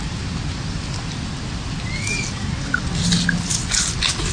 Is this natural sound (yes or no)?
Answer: yes